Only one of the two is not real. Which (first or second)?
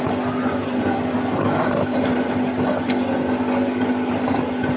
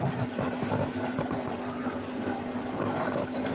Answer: second